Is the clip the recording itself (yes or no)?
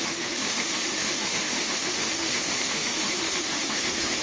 no